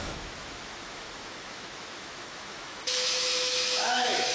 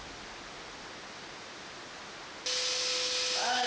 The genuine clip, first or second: second